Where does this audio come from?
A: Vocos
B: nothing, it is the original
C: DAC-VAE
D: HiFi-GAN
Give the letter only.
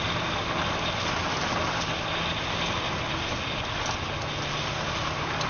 B